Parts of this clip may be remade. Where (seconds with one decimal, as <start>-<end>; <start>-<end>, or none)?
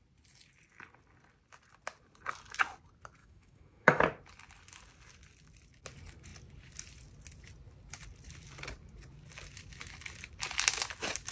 3.2-4.0